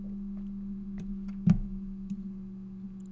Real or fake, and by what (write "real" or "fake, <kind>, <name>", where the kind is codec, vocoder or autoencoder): real